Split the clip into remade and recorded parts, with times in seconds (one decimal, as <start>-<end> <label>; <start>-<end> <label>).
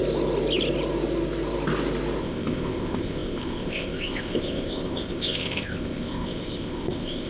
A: 0.0-2.2 recorded; 2.2-7.3 remade